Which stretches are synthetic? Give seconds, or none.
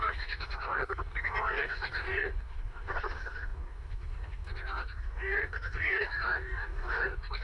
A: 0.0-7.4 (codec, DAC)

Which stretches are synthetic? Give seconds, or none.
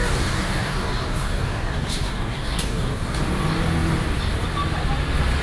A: 0.0-3.2 (codec, DAC)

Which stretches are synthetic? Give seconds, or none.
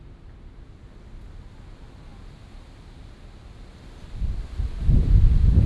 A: none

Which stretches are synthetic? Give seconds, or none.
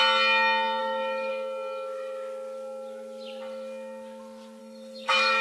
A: 0.8-1.3 (codec, DAC); 4.6-5.4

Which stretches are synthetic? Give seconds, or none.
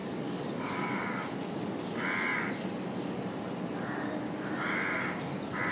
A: 0.0-1.0 (codec, DAC)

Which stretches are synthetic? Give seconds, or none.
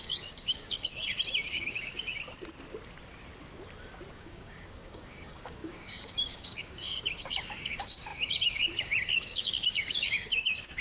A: 0.0-0.9 (codec, DAC); 1.5-2.1; 4.1-10.8